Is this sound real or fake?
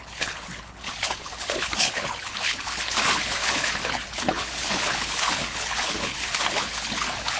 fake